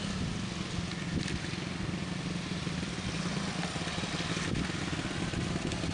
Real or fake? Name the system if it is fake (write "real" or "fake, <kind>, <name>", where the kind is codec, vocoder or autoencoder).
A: real